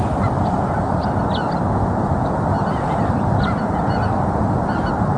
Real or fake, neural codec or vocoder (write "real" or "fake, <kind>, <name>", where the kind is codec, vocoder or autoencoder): real